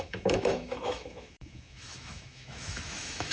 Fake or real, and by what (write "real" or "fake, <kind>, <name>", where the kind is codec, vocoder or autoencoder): fake, autoencoder, DAC-VAE